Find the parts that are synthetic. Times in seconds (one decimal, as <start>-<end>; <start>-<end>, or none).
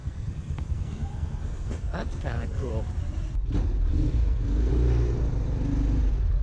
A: 0.0-2.7; 3.9-4.7